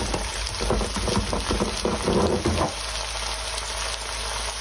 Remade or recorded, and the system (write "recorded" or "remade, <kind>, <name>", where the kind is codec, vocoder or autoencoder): recorded